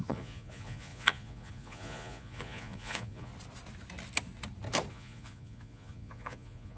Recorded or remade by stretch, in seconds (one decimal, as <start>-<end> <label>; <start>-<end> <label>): 0.0-3.3 remade; 3.3-4.9 recorded; 4.9-6.8 remade